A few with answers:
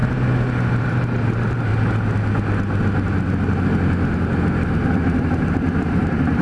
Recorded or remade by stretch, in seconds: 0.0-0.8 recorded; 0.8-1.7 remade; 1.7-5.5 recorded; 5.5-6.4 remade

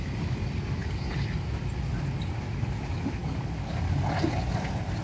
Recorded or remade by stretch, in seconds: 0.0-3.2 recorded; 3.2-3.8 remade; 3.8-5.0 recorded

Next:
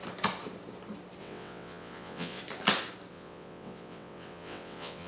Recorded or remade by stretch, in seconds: 0.0-1.2 recorded; 1.2-2.4 remade; 2.4-3.1 recorded; 3.1-5.1 remade